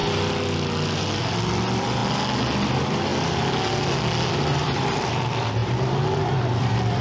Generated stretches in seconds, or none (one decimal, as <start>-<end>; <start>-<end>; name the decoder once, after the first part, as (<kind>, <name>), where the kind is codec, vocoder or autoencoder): 1.2-2.0 (vocoder, BigVGAN v2); 2.7-3.1; 4.3-7.0